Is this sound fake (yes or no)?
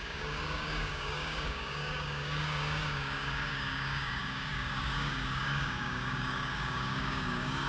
yes